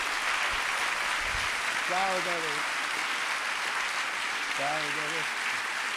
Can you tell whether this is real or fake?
real